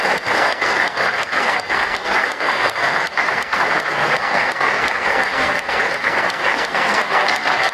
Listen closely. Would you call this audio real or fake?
fake